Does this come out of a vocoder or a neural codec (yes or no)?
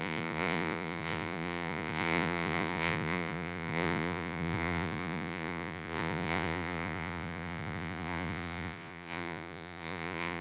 yes